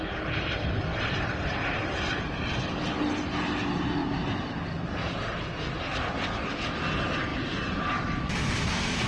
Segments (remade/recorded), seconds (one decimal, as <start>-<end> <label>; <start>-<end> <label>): 0.0-0.9 recorded; 0.9-2.5 remade; 2.5-4.0 recorded; 4.0-4.9 remade; 4.9-7.3 recorded; 7.3-9.1 remade